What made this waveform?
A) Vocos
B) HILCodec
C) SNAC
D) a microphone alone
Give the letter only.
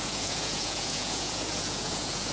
A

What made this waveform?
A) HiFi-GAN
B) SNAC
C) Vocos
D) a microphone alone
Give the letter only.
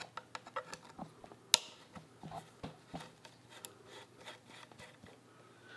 D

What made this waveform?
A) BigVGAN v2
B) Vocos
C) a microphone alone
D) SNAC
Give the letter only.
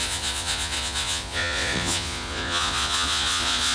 B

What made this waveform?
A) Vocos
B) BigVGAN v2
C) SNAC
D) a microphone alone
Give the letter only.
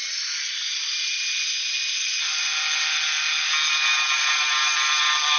D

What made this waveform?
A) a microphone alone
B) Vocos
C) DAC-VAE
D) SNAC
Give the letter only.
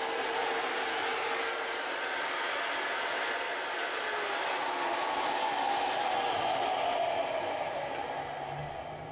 A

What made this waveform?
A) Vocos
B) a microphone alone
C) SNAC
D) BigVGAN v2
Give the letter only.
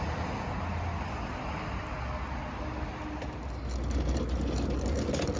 B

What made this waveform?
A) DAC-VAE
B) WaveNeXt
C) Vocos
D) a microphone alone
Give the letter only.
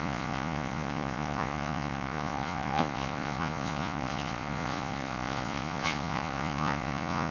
C